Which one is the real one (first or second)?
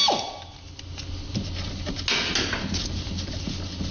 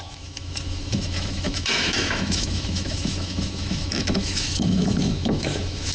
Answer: first